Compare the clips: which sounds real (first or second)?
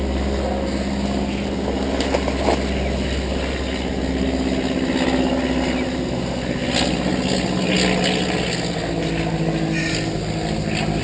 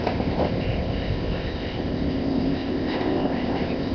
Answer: first